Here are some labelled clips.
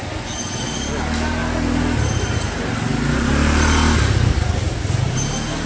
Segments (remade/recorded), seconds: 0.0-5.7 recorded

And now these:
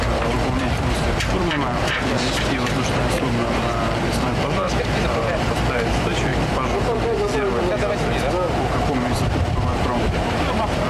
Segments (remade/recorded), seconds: 0.0-6.3 remade; 6.3-8.5 recorded; 8.5-10.9 remade

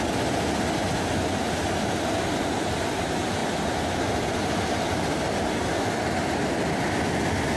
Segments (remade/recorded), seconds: 0.0-7.6 recorded

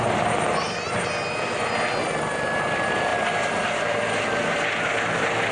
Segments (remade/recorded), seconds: 0.0-5.5 recorded

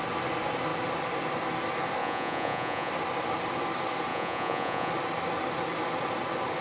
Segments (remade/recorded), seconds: 0.0-2.0 recorded; 2.0-2.9 remade; 2.9-4.1 recorded; 4.1-4.9 remade; 4.9-6.6 recorded

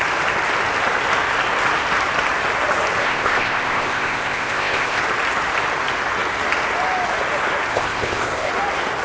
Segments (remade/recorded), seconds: 0.0-3.0 recorded; 3.0-5.0 remade; 5.0-7.7 recorded; 7.7-8.5 remade; 8.5-9.0 recorded